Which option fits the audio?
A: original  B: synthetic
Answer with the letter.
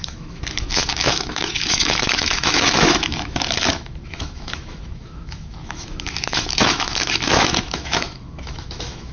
B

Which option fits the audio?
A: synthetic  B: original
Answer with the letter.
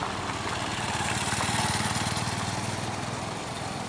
B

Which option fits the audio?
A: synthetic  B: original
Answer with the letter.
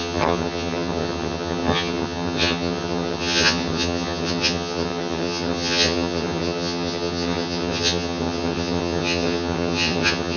A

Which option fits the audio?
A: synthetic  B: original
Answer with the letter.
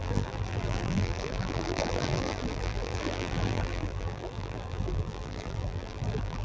A